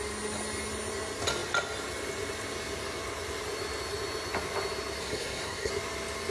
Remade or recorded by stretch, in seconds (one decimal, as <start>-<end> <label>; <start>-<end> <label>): 0.0-5.0 recorded; 5.0-5.7 remade; 5.7-6.3 recorded